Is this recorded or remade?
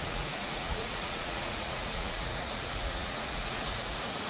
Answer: remade